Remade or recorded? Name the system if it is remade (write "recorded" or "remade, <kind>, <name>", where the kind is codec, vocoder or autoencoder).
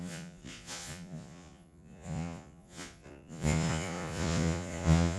remade, vocoder, Vocos